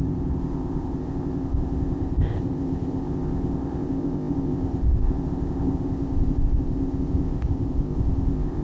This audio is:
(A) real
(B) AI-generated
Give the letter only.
B